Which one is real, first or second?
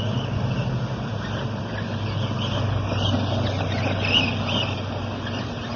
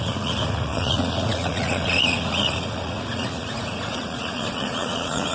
first